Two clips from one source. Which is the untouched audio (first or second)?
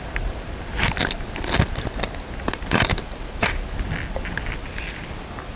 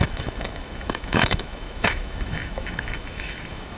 first